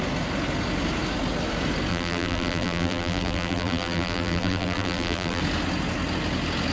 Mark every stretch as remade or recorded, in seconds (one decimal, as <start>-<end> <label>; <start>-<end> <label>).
0.0-1.9 recorded; 1.9-5.4 remade; 5.4-6.7 recorded